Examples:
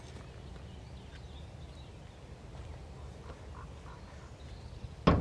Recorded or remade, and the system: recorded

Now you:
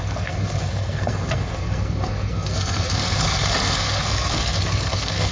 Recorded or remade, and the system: remade, codec, SNAC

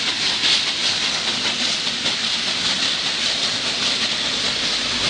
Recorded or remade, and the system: recorded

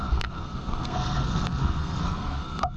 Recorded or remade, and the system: remade, codec, SNAC